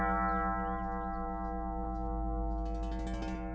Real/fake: real